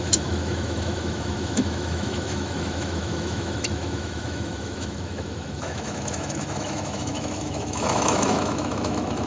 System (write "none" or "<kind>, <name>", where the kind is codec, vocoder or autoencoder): autoencoder, DAC-VAE